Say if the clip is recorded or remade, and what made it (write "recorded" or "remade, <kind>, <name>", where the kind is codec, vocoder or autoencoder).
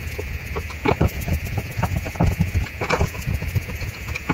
remade, vocoder, Vocos